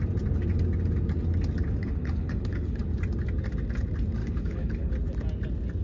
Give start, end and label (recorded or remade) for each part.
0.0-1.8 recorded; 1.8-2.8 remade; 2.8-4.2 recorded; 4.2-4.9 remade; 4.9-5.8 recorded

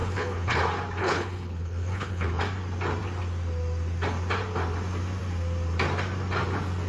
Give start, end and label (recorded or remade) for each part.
0.0-0.6 remade; 0.6-1.0 recorded; 1.0-2.4 remade; 2.4-6.9 recorded

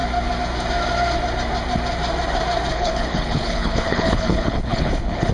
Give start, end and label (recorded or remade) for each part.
0.0-2.7 recorded; 2.7-5.3 remade

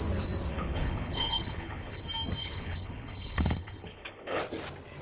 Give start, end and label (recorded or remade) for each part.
0.0-0.5 recorded; 0.5-2.0 remade; 2.0-2.4 recorded; 2.4-4.4 remade; 4.4-5.0 recorded

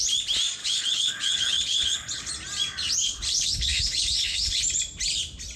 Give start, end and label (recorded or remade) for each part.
0.0-0.6 recorded; 0.6-2.3 remade; 2.3-3.0 recorded; 3.0-4.6 remade; 4.6-5.6 recorded

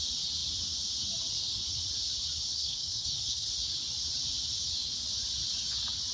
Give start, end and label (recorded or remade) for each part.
0.0-2.5 recorded; 2.5-3.5 remade; 3.5-6.1 recorded

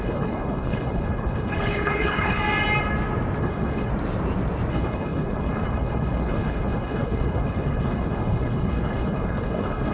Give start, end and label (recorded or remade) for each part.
0.0-2.4 remade; 2.4-3.4 recorded; 3.4-3.9 remade; 3.9-4.7 recorded; 4.7-9.9 remade

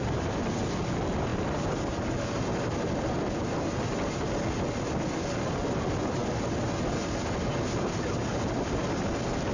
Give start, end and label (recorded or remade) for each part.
0.0-9.5 recorded